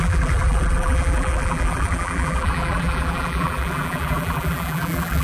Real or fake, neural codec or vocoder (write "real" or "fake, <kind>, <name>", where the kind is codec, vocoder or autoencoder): fake, vocoder, BigVGAN v2